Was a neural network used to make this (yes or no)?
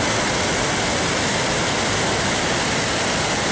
no